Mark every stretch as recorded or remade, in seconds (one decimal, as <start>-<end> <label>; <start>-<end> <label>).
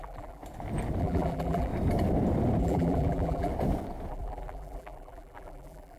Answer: 0.0-0.4 remade; 0.4-1.0 recorded; 1.0-1.7 remade; 1.7-2.6 recorded; 2.6-3.5 remade; 3.5-4.1 recorded; 4.1-6.0 remade